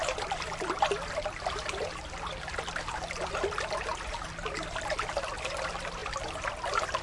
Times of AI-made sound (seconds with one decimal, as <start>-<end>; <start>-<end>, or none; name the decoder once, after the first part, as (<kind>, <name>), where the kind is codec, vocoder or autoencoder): none